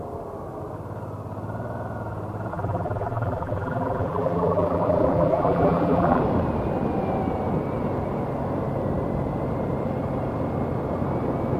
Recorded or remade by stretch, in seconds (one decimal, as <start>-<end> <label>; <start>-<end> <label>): 0.0-2.5 recorded; 2.5-6.2 remade; 6.2-11.6 recorded